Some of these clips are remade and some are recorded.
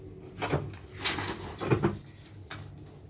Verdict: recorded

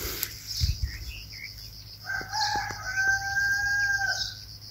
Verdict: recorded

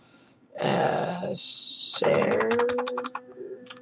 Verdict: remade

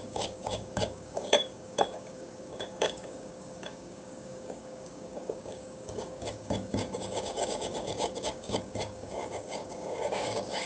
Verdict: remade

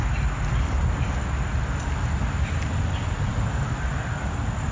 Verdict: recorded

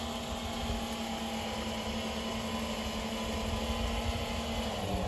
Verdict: recorded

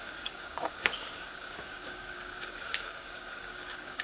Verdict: remade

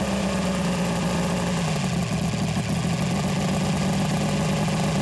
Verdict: recorded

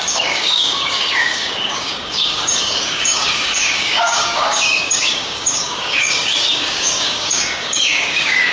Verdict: remade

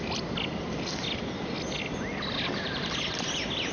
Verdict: recorded